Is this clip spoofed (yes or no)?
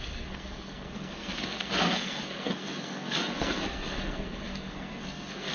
yes